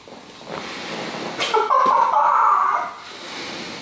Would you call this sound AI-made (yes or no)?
no